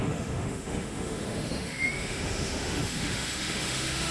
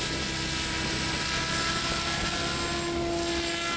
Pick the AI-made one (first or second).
first